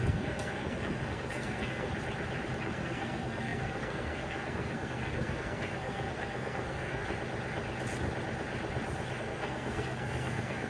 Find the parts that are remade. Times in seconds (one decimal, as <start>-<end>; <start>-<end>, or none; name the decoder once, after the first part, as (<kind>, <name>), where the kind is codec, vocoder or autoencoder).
0.0-1.9 (codec, SNAC); 2.6-7.0; 9.2-10.7